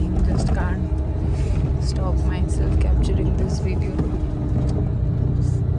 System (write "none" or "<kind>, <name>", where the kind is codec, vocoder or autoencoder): none